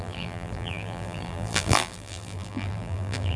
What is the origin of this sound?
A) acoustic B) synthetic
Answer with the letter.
B